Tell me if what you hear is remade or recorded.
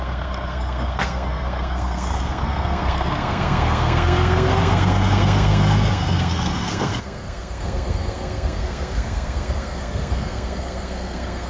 remade